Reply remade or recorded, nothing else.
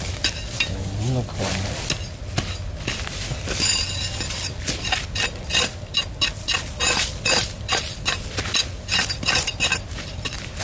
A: recorded